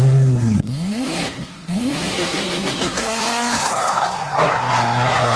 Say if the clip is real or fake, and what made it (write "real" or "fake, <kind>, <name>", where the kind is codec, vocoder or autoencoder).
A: fake, codec, SNAC